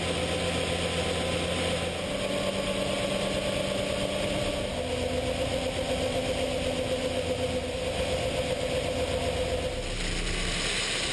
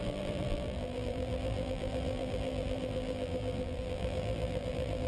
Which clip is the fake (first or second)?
second